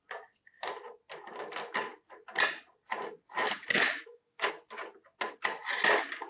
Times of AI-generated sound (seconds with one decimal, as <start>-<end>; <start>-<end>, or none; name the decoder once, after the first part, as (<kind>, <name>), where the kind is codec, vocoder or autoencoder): 3.7-4.5 (autoencoder, DAC-VAE)